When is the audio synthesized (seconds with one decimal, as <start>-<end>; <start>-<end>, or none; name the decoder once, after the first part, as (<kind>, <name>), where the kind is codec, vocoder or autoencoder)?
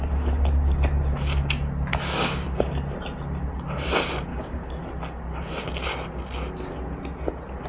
1.9-2.7 (codec, DAC); 4.3-4.8